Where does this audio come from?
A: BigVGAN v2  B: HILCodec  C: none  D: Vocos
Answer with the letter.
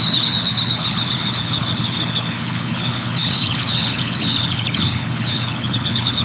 B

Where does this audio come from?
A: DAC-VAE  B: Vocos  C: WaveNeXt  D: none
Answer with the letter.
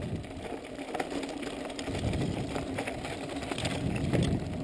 D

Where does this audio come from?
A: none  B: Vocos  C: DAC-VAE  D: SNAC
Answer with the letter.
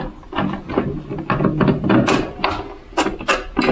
A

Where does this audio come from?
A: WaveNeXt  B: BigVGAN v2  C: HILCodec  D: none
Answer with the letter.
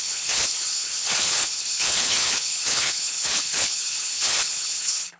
C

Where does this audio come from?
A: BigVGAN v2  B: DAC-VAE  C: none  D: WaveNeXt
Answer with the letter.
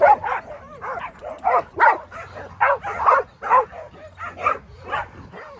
C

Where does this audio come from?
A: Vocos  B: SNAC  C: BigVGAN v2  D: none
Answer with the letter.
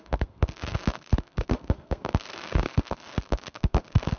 B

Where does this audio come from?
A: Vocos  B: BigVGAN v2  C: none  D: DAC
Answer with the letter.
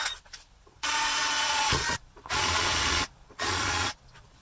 A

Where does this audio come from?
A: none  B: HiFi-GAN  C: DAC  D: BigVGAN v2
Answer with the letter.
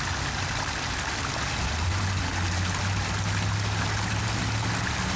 A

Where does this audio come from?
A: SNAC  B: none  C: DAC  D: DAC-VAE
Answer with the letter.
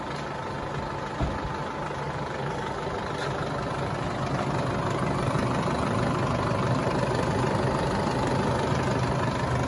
B